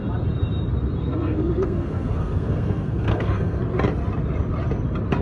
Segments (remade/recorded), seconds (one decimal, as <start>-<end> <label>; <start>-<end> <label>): 0.0-1.0 recorded; 1.0-3.6 remade; 3.6-5.2 recorded